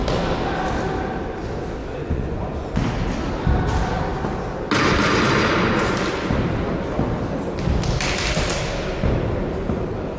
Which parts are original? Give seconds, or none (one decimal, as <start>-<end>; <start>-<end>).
0.0-1.8; 2.7-10.2